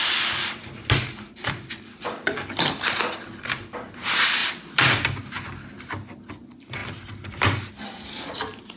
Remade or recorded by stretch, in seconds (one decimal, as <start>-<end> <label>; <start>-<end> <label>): 0.0-8.8 recorded